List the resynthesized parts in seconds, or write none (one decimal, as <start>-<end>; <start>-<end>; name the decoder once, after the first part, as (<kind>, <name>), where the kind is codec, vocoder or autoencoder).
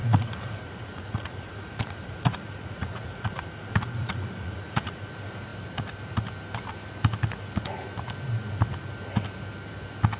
0.0-5.1 (vocoder, Vocos)